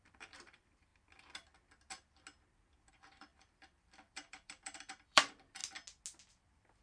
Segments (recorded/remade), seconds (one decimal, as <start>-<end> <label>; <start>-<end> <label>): 0.0-0.9 remade; 0.9-2.9 recorded; 2.9-5.6 remade; 5.6-6.3 recorded; 6.3-6.8 remade